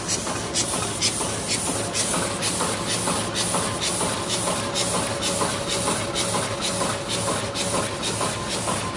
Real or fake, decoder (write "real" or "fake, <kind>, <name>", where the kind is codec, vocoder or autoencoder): real